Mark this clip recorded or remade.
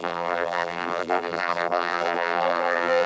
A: remade